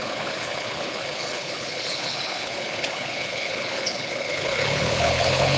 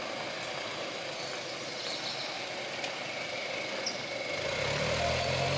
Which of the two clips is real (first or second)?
second